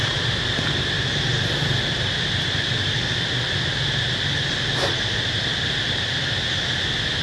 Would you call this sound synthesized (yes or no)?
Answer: no